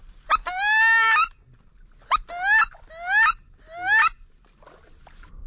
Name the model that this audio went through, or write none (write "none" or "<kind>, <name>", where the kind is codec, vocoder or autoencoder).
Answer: none